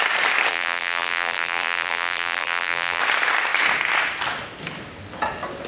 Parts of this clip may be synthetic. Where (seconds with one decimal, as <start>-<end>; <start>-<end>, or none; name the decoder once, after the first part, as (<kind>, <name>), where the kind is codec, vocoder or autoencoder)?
0.5-3.0 (vocoder, BigVGAN v2)